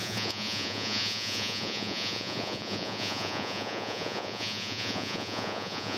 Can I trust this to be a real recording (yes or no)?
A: no